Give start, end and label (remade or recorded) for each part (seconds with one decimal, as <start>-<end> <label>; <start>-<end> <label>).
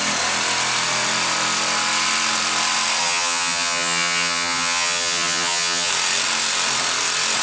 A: 0.0-3.0 recorded; 3.0-5.9 remade; 5.9-7.4 recorded